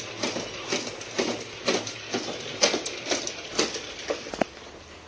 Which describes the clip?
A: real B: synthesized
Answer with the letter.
A